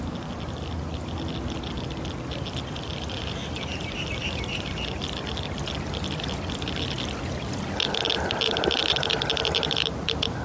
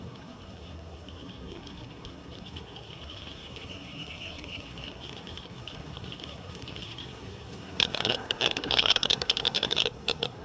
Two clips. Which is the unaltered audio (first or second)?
first